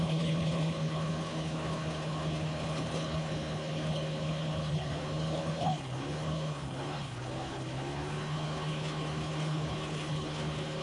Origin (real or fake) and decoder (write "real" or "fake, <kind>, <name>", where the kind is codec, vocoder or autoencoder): fake, codec, HILCodec